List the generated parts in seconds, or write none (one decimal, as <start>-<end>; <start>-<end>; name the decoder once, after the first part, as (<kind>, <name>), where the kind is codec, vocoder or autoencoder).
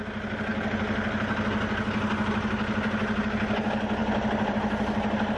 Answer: none